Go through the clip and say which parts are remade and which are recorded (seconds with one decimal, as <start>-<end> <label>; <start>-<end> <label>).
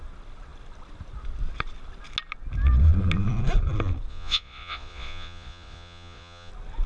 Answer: 0.0-4.1 recorded; 4.1-6.5 remade; 6.5-6.9 recorded